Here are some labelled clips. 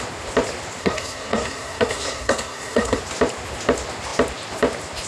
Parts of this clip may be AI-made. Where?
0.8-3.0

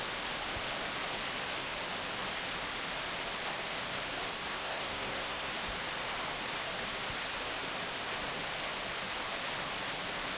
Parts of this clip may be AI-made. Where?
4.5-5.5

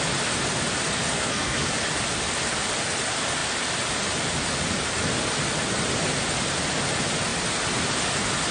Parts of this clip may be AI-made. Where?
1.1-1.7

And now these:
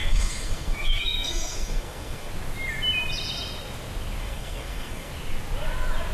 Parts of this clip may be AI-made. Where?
0.0-2.3; 4.2-5.1

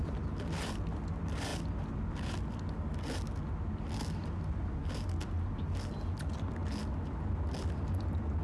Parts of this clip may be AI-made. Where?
none

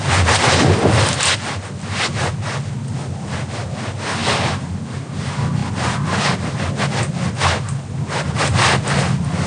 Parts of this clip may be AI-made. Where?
none

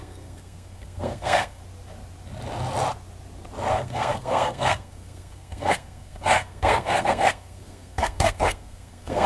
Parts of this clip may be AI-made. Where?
0.0-1.6; 3.7-9.3